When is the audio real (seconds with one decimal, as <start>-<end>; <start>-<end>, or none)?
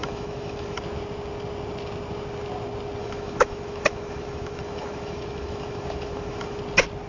0.8-3.0; 6.6-7.1